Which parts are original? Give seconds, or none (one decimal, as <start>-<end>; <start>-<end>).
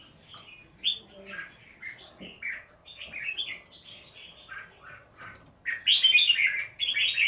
0.0-0.6; 2.1-7.3